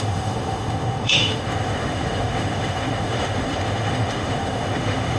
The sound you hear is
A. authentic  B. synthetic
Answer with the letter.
B